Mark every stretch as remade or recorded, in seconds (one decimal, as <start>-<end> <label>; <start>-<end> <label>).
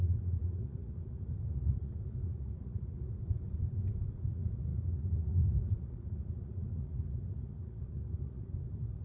0.0-3.2 remade; 3.2-4.3 recorded; 4.3-9.0 remade